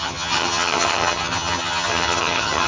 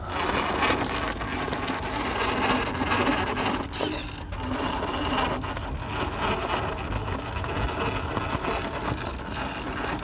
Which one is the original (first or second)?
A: second